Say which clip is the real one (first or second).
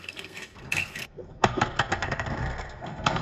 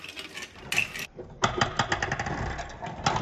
second